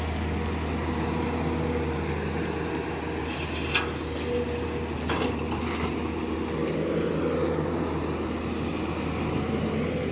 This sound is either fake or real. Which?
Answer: real